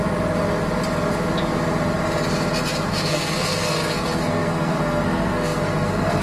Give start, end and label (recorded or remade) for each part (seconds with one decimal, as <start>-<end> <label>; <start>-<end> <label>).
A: 0.0-2.9 recorded; 2.9-6.2 remade